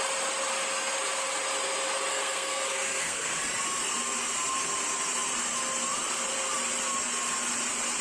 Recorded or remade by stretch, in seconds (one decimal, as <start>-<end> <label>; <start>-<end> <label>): 0.0-2.1 recorded; 2.1-3.4 remade; 3.4-8.0 recorded